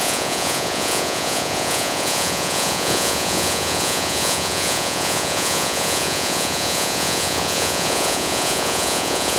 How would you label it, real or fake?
fake